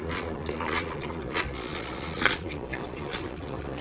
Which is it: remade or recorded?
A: remade